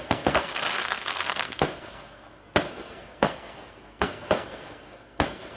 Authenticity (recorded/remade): remade